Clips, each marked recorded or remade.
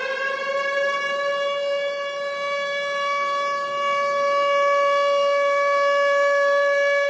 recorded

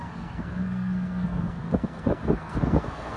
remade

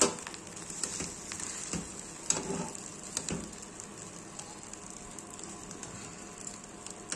recorded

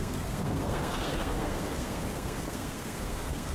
remade